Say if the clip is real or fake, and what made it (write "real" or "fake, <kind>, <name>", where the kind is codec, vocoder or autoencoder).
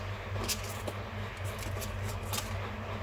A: real